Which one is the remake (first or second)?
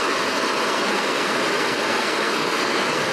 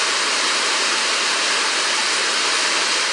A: first